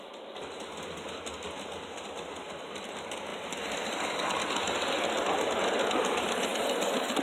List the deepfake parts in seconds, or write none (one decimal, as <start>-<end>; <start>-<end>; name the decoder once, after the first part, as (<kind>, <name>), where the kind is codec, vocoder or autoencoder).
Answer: none